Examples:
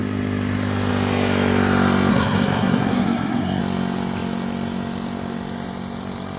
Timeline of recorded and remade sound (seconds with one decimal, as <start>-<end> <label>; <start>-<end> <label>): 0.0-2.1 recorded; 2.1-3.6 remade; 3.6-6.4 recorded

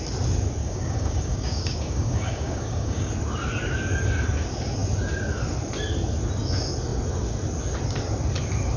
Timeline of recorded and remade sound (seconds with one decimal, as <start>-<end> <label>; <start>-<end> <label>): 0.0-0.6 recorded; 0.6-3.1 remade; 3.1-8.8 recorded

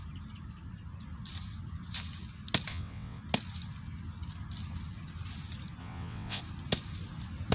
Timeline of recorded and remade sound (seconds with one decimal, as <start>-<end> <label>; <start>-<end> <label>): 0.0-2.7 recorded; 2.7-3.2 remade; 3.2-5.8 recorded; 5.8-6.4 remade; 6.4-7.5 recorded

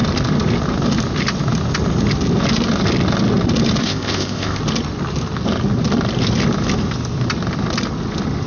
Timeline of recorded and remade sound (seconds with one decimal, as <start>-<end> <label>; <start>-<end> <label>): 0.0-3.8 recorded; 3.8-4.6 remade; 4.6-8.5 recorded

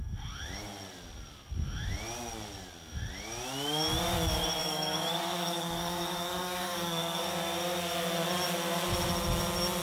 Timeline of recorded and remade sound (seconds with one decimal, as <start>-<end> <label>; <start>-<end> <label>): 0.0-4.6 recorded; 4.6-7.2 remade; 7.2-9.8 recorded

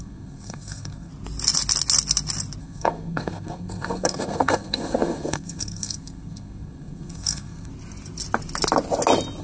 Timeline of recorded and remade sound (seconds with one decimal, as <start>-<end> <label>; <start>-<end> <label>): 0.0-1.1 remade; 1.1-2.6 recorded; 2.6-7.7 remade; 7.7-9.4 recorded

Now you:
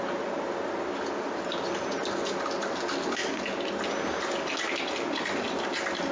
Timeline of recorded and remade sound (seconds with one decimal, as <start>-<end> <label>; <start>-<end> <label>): 0.0-6.1 recorded